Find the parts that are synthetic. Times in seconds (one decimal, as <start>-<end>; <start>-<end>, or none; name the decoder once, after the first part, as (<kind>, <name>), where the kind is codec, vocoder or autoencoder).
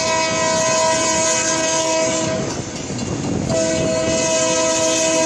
1.4-2.9 (codec, DAC)